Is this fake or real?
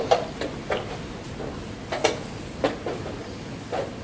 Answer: real